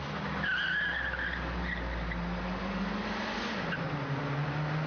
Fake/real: real